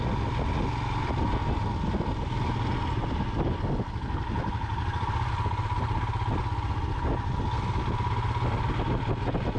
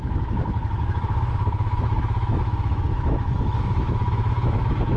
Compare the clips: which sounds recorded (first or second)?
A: first